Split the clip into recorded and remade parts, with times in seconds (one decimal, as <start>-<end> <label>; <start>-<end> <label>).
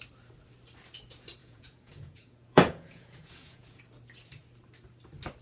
0.0-1.4 recorded; 1.4-3.8 remade; 3.8-5.4 recorded